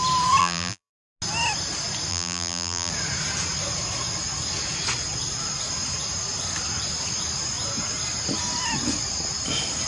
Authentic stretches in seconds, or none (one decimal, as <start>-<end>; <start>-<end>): 0.0-0.4; 0.9-2.1; 2.9-9.9

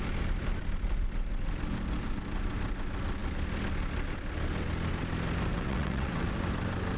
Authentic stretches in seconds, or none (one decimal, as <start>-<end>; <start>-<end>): 0.0-5.5; 6.3-7.0